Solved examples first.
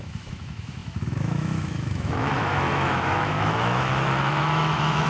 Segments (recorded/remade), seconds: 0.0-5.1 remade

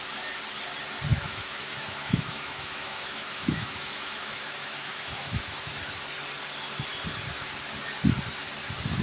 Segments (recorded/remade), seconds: 0.0-1.1 recorded; 1.1-5.7 remade; 5.7-9.0 recorded